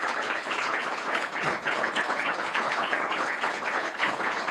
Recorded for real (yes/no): no